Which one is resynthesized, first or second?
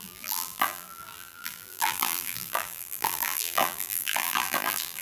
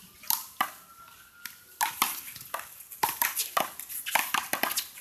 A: first